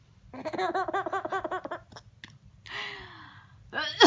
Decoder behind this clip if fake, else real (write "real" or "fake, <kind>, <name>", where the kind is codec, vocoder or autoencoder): real